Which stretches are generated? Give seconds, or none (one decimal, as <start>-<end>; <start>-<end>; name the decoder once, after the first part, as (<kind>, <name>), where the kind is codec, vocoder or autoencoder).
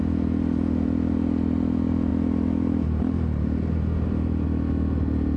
none